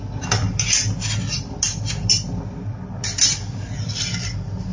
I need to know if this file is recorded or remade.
recorded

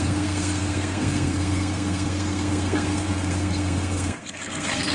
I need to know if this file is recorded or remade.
remade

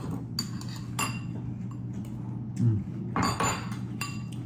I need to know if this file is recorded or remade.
recorded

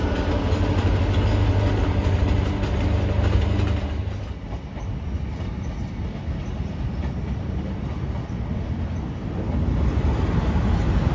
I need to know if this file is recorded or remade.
recorded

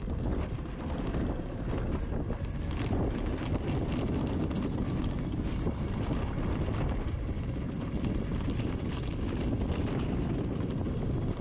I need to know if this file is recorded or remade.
recorded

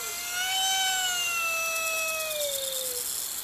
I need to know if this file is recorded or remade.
recorded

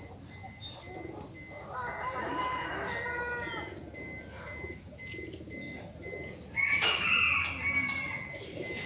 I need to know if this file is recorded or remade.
recorded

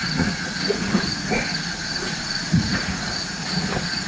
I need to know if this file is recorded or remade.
remade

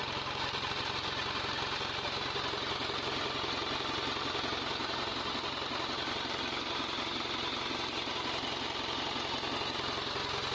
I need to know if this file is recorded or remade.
recorded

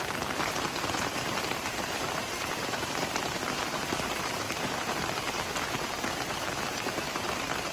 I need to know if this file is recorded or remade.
remade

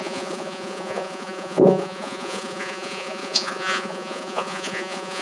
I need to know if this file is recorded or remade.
remade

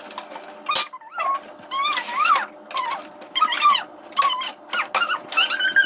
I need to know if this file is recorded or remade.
recorded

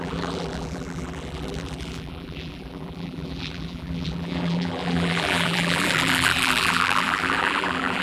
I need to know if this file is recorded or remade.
remade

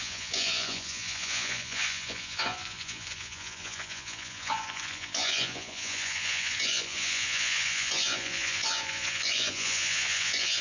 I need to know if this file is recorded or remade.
remade